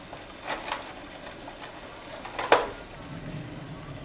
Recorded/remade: recorded